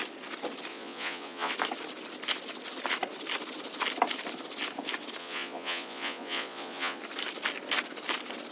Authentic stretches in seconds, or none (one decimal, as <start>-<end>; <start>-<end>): 0.0-0.7; 1.5-5.2; 7.0-8.5